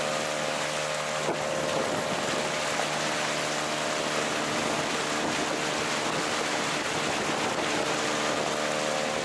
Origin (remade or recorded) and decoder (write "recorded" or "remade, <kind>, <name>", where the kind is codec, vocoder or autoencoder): recorded